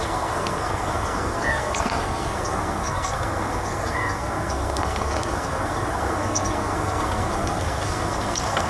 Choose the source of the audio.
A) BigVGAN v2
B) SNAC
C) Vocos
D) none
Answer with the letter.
B